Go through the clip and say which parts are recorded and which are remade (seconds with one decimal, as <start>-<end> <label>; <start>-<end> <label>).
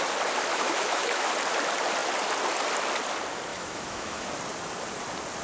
0.0-0.5 recorded; 0.5-1.3 remade; 1.3-3.5 recorded; 3.5-4.3 remade; 4.3-5.4 recorded